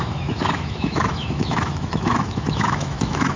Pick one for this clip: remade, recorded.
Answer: remade